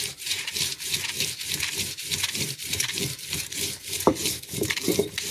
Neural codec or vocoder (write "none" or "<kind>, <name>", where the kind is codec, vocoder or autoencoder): vocoder, BigVGAN v2